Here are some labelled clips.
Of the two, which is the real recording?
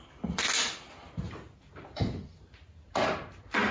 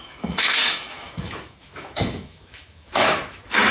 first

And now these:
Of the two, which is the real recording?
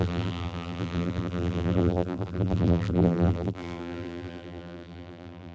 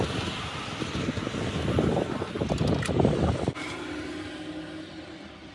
second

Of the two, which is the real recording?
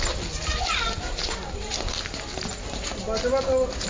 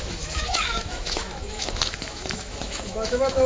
first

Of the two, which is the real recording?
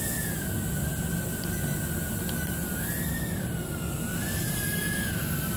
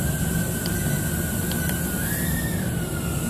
first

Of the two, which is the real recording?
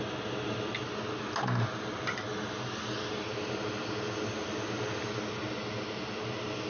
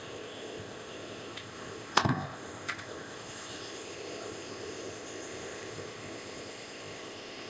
first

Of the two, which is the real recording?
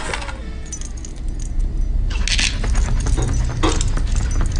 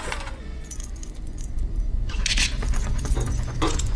first